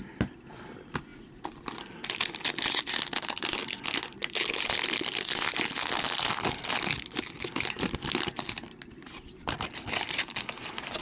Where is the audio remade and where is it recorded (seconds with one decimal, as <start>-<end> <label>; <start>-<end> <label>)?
0.0-11.0 recorded

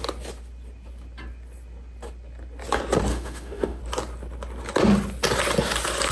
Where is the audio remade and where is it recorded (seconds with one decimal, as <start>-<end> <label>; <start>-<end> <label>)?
0.0-3.1 recorded; 3.1-3.8 remade; 3.8-6.1 recorded

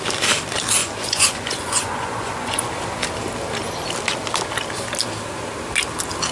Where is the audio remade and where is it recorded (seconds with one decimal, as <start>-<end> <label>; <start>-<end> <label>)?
0.0-0.8 recorded; 0.8-2.7 remade; 2.7-6.3 recorded